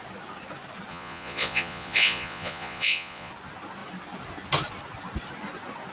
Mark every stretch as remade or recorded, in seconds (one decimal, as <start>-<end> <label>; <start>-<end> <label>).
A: 0.0-0.9 recorded; 0.9-3.3 remade; 3.3-5.9 recorded